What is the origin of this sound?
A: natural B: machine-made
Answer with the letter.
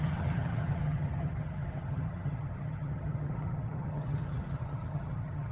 B